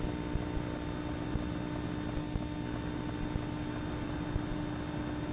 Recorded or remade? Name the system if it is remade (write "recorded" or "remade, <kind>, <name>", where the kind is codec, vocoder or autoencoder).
recorded